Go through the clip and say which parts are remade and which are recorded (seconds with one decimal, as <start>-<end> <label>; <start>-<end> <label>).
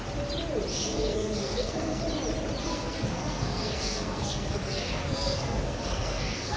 0.0-0.7 recorded; 0.7-2.0 remade; 2.0-2.6 recorded; 2.6-6.6 remade